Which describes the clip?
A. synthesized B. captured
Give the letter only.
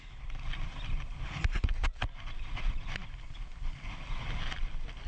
B